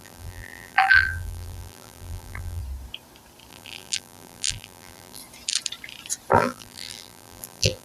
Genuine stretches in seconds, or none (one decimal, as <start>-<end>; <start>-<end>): 2.6-3.5; 5.2-6.3